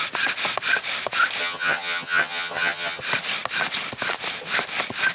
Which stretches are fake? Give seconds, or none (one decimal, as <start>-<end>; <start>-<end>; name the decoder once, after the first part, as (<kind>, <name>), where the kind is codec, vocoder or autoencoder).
1.4-3.0 (vocoder, HiFi-GAN)